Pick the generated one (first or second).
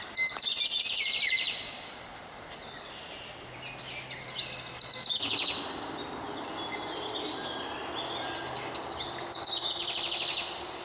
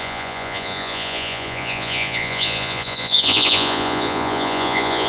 second